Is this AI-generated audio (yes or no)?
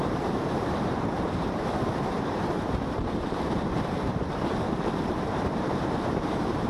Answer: yes